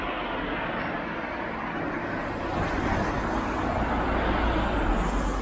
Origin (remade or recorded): recorded